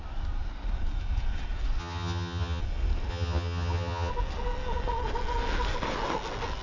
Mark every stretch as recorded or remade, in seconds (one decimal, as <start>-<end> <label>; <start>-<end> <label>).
0.0-1.8 recorded; 1.8-2.6 remade; 2.6-3.1 recorded; 3.1-4.1 remade; 4.1-6.6 recorded